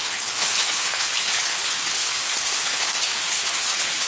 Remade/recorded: remade